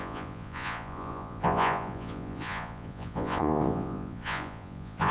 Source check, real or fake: fake